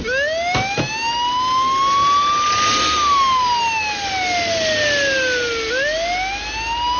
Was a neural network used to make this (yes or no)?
no